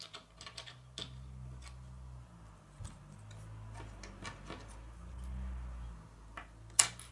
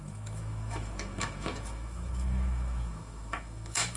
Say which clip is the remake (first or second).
second